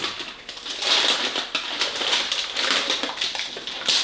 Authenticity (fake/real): real